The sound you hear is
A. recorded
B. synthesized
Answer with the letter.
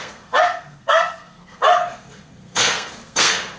B